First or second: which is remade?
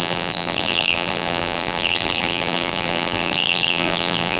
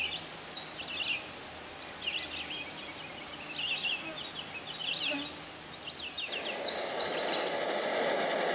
first